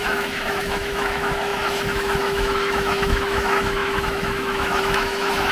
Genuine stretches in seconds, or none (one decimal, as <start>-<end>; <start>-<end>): none